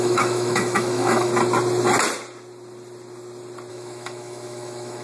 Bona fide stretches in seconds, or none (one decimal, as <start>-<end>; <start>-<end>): 1.3-3.7